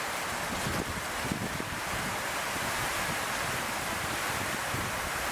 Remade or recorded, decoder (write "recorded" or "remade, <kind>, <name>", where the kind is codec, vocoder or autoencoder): recorded